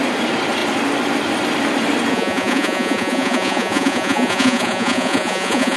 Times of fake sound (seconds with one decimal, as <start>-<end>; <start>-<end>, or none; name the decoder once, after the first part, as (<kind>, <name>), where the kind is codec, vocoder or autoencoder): 2.1-5.8 (vocoder, Vocos)